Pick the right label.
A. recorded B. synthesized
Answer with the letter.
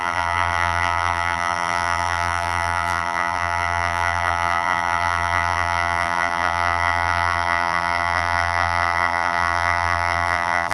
B